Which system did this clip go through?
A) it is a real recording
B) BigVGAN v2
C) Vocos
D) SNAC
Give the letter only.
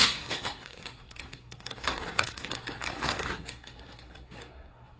D